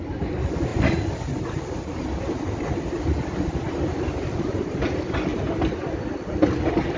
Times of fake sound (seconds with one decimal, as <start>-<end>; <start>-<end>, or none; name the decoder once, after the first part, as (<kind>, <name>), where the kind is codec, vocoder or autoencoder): none